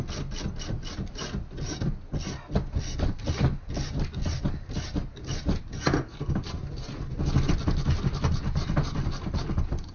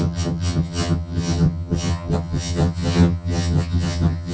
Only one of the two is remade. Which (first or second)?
second